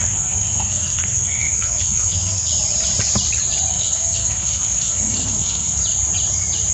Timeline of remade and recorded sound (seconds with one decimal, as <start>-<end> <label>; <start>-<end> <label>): 0.0-2.5 remade; 2.5-3.7 recorded; 3.7-5.8 remade; 5.8-6.7 recorded